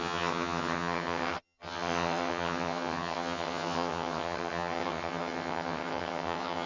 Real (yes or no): no